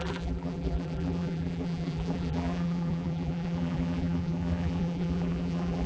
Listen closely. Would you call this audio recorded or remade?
remade